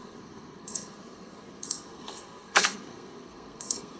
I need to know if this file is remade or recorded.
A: remade